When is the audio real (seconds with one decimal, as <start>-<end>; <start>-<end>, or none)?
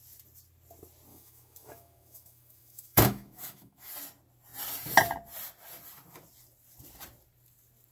0.0-1.1; 3.9-7.9